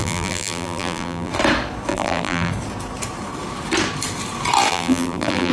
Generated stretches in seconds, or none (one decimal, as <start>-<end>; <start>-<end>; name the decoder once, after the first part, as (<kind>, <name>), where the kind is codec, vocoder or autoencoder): 0.0-1.3 (vocoder, BigVGAN v2); 1.9-2.5; 4.7-5.5